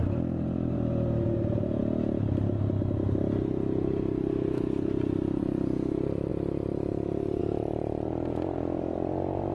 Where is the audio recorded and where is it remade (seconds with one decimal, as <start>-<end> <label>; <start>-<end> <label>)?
0.0-1.8 remade; 1.8-5.4 recorded; 5.4-9.5 remade